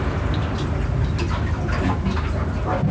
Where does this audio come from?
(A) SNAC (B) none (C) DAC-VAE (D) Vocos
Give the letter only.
B